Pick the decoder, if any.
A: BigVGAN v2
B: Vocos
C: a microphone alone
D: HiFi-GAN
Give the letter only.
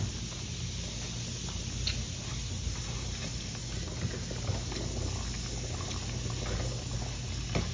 C